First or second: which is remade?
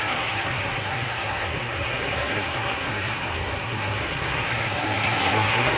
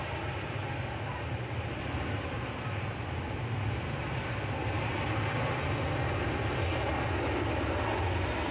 first